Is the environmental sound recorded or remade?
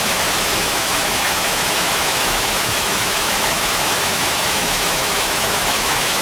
remade